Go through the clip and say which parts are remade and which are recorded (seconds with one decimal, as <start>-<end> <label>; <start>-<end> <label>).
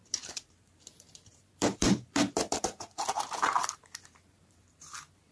0.0-5.3 remade